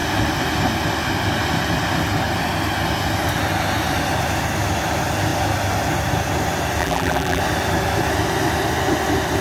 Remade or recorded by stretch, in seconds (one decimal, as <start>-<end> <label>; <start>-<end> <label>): 0.0-6.8 recorded; 6.8-7.4 remade; 7.4-9.4 recorded